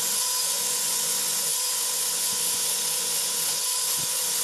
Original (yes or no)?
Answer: no